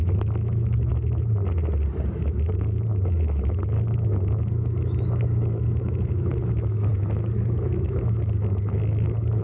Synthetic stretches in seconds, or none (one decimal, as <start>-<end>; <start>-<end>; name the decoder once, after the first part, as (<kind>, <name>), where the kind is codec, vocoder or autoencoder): 0.0-0.9 (autoencoder, DAC-VAE); 2.2-9.4